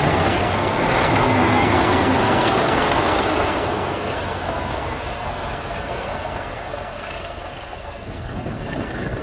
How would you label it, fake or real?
fake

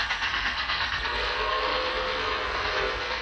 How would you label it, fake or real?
fake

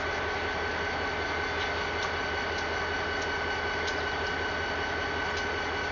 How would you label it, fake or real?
real